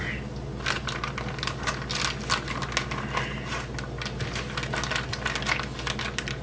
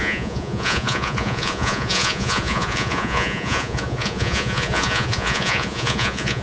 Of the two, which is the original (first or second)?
first